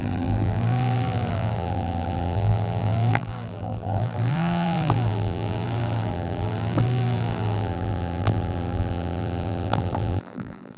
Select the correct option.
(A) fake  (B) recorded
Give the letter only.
A